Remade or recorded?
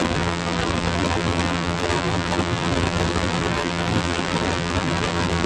remade